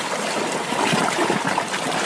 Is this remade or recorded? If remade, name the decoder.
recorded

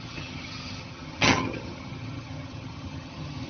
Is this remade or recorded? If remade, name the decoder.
remade, vocoder, HiFi-GAN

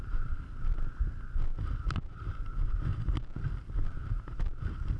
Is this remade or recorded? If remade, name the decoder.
recorded